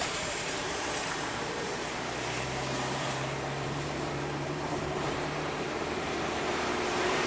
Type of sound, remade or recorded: remade